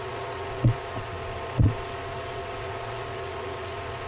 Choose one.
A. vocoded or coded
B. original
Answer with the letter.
A